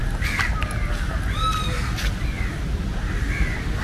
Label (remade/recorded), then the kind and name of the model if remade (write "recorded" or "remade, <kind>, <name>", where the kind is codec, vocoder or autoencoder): recorded